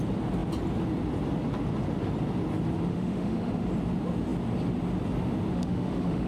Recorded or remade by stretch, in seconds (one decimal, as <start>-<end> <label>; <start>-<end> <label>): 0.0-2.9 recorded; 2.9-3.7 remade; 3.7-5.5 recorded; 5.5-6.3 remade

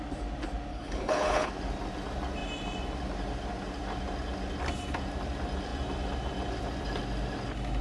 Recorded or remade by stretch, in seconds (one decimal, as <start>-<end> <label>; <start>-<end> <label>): 0.0-0.7 recorded; 0.7-1.5 remade; 1.5-7.8 recorded

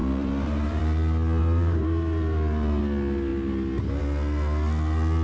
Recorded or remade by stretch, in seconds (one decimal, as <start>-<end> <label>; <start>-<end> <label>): 0.0-0.8 remade; 0.8-1.4 recorded; 1.4-2.8 remade; 2.8-5.2 recorded